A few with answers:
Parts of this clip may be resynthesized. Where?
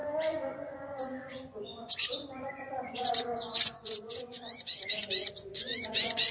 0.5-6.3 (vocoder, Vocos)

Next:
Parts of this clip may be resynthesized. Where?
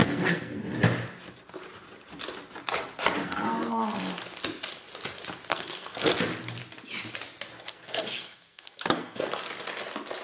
0.0-0.6 (codec, SNAC); 3.2-4.0; 5.5-6.1; 7.7-9.3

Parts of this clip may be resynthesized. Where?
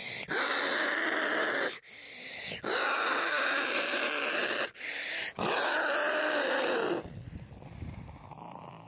none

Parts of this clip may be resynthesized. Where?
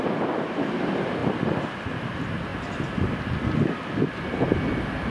none